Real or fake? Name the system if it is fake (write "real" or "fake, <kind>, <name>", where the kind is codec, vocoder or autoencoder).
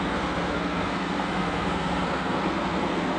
fake, codec, SNAC